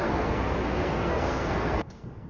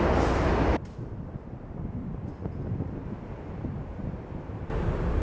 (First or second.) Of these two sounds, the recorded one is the second